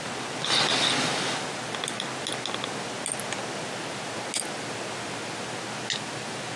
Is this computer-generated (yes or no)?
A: no